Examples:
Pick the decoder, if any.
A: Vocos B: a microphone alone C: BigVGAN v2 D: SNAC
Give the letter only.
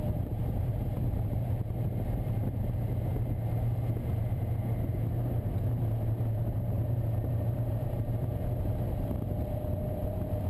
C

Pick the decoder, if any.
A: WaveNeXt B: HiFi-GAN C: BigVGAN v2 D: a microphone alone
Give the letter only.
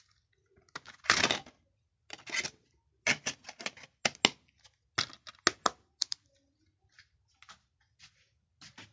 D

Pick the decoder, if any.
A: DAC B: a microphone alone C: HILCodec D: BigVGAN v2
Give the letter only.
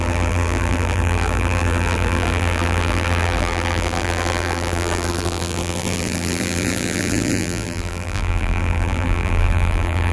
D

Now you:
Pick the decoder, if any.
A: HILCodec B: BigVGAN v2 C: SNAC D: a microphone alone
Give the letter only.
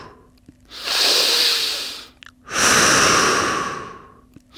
D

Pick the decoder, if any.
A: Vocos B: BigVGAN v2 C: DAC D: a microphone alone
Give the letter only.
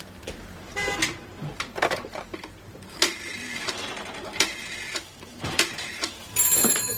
B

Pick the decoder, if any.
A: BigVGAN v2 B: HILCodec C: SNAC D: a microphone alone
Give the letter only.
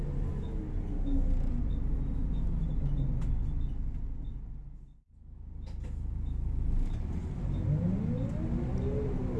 D